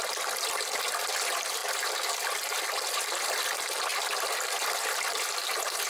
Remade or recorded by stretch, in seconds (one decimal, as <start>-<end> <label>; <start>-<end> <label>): 0.0-5.9 recorded